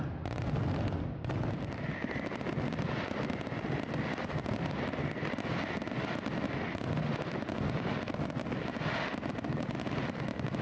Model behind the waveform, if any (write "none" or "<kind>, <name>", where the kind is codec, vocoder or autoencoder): none